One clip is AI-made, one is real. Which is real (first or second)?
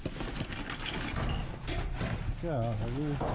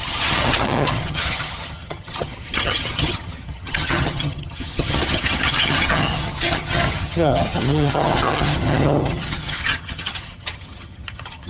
first